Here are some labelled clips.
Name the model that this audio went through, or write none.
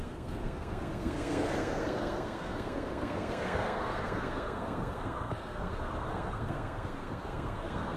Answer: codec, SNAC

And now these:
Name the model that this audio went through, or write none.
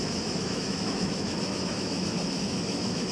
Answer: autoencoder, DAC-VAE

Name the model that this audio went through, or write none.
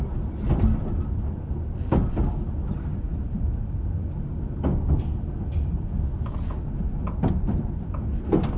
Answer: none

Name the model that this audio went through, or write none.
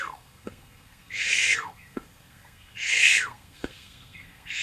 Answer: codec, SNAC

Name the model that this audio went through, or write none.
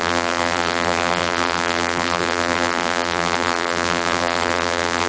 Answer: vocoder, BigVGAN v2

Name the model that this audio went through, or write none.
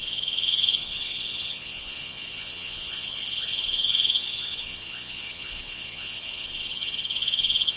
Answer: vocoder, Vocos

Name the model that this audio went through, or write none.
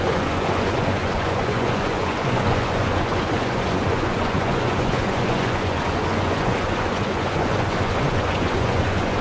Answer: vocoder, Vocos